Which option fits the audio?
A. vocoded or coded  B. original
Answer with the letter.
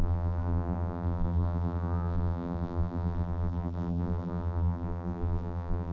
A